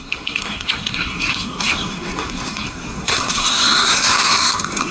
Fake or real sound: fake